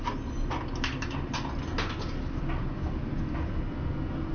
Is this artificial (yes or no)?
no